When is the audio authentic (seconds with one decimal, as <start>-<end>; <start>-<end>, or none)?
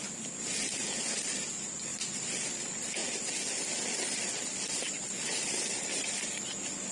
0.0-6.9